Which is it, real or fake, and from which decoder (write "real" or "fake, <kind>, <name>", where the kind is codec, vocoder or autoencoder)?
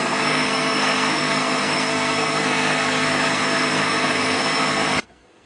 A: fake, codec, SNAC